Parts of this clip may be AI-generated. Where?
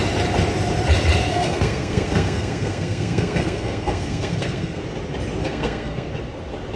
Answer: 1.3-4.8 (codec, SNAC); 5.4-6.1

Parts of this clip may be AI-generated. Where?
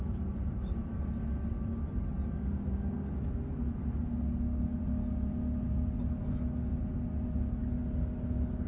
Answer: none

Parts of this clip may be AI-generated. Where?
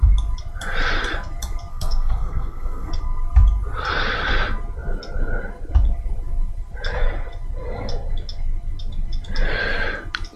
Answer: 1.7-3.0 (codec, SNAC)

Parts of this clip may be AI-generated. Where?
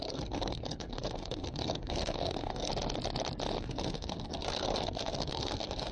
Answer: 0.0-2.7 (codec, SNAC); 3.6-5.9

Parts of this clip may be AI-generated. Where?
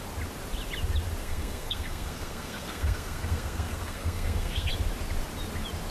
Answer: 1.2-4.7 (codec, SNAC)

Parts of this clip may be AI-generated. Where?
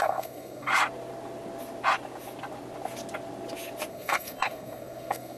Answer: 0.0-0.7 (codec, SNAC); 3.9-5.4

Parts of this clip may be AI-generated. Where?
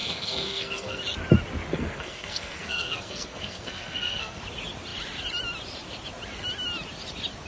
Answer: 0.0-1.0 (codec, SNAC); 1.7-4.4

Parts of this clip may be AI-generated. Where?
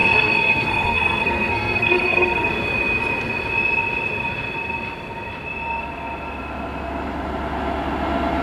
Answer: 0.0-2.5 (codec, SNAC)